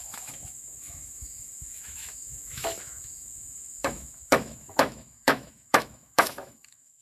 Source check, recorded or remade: remade